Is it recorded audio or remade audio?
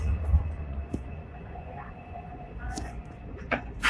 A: remade